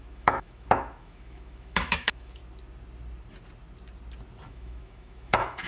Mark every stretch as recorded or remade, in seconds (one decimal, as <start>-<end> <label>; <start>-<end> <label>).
0.0-2.4 remade; 2.4-4.5 recorded; 4.5-5.7 remade